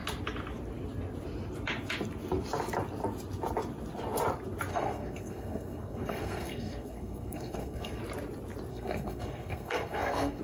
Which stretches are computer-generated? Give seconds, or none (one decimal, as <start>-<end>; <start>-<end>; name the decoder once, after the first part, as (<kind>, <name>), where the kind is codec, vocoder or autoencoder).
4.7-8.0 (codec, SNAC); 8.7-10.4

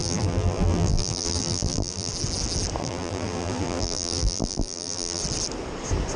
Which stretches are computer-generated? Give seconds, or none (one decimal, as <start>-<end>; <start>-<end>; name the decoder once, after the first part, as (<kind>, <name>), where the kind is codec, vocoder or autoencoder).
0.0-2.1 (vocoder, BigVGAN v2); 2.8-5.2